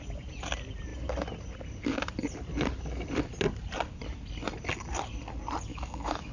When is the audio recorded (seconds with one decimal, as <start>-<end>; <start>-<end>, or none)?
0.0-5.7